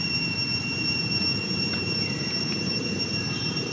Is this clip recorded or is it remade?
recorded